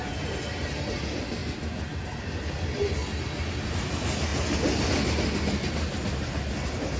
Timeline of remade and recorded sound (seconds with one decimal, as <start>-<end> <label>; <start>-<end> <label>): 0.0-7.0 recorded